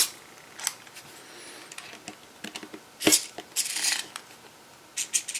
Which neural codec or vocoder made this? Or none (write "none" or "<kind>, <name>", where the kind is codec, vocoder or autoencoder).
none